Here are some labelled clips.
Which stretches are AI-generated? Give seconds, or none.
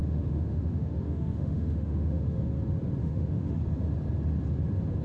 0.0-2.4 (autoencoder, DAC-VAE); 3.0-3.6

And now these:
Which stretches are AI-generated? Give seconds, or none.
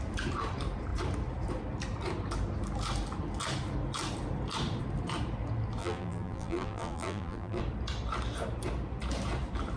5.8-7.6 (vocoder, BigVGAN v2)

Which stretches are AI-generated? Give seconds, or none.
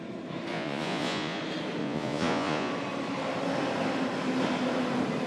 0.5-1.4 (vocoder, Vocos); 1.8-2.7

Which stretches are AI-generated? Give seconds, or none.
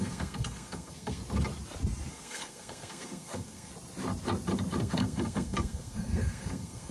0.0-1.2 (codec, SNAC); 2.1-3.7; 4.8-6.9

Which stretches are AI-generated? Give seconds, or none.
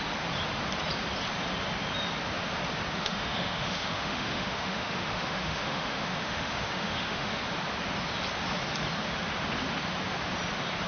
2.9-7.4 (autoencoder, DAC-VAE)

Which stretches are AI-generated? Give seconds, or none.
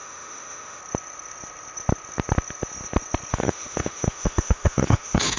0.0-0.8 (autoencoder, DAC-VAE); 3.3-5.4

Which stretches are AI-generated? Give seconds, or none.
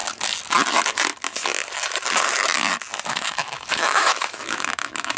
3.1-5.2 (autoencoder, DAC-VAE)